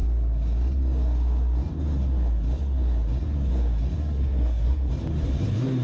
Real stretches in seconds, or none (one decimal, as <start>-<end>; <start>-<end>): 0.0-4.0; 4.9-5.8